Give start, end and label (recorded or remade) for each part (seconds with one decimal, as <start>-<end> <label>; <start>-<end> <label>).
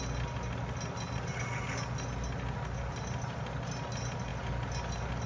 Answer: 0.0-5.3 recorded